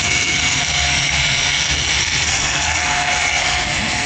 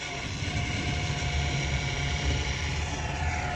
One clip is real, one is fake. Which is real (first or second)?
second